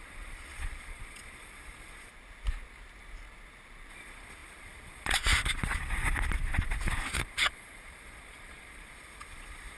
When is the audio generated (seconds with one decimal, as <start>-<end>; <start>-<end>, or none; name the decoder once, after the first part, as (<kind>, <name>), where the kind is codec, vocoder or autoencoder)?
0.0-2.1 (vocoder, Vocos); 3.9-9.8